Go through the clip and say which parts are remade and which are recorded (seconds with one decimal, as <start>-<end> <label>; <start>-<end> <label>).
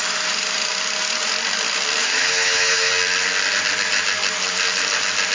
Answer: 0.0-2.0 recorded; 2.0-2.9 remade; 2.9-5.3 recorded